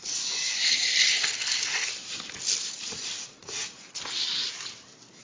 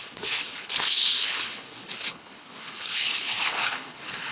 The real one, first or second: first